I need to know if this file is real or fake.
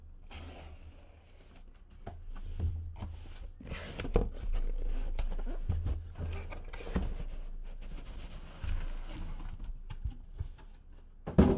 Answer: real